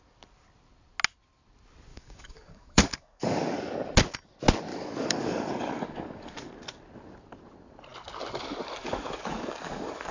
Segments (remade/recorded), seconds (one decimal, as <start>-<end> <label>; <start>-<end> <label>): 0.0-1.9 recorded; 1.9-3.7 remade; 3.7-4.7 recorded; 4.7-6.5 remade; 6.5-8.8 recorded; 8.8-10.1 remade